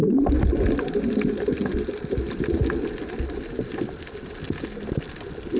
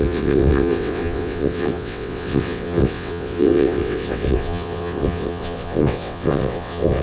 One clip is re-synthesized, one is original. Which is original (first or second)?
first